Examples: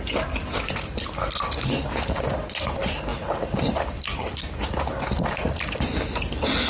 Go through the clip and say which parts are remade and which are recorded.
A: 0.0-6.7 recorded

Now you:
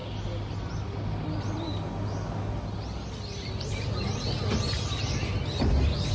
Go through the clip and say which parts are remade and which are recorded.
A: 0.0-6.1 recorded

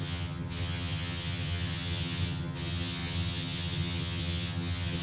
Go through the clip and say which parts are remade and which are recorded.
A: 0.0-5.0 remade